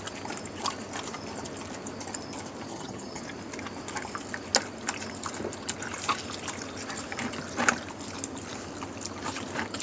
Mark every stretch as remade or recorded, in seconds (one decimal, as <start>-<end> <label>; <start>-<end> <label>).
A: 0.0-2.7 recorded; 2.7-3.2 remade; 3.2-9.8 recorded

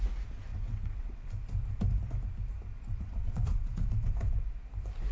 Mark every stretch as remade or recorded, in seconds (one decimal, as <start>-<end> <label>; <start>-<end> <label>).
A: 0.0-0.5 recorded; 0.5-1.3 remade; 1.3-2.7 recorded; 2.7-4.1 remade; 4.1-5.1 recorded

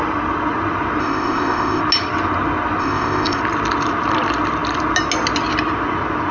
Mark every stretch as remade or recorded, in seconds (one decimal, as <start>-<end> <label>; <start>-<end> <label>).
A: 0.0-1.0 recorded; 1.0-1.8 remade; 1.8-2.8 recorded; 2.8-3.4 remade; 3.4-6.3 recorded

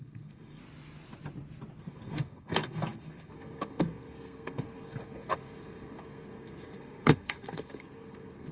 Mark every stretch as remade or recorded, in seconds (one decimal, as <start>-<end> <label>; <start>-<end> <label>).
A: 0.0-0.6 remade; 0.6-1.8 recorded; 1.8-8.5 remade

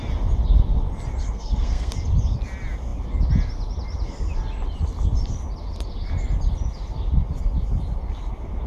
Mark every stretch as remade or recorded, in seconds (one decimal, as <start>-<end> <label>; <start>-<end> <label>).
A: 0.0-1.2 recorded; 1.2-1.9 remade; 1.9-8.7 recorded